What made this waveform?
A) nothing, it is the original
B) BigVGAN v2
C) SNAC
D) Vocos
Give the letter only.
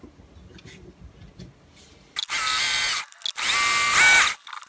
A